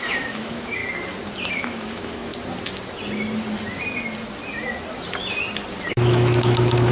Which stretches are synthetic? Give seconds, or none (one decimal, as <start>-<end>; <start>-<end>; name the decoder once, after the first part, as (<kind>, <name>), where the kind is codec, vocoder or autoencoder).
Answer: 0.0-0.8 (autoencoder, DAC-VAE); 1.5-2.3; 5.9-6.9